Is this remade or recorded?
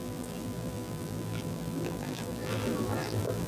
remade